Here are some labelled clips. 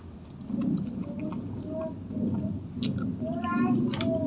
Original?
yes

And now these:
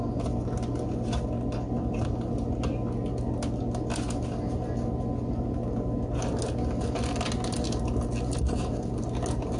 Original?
yes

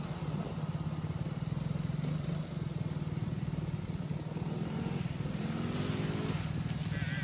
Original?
yes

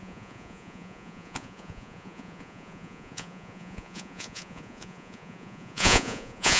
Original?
no